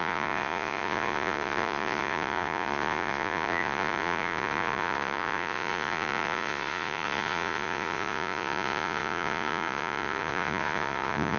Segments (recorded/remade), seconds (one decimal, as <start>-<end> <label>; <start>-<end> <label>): 0.0-11.4 remade